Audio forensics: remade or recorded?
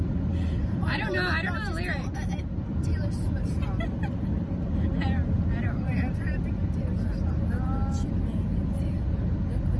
recorded